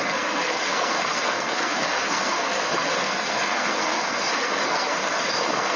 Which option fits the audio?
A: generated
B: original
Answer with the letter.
A